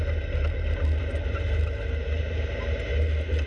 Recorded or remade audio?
recorded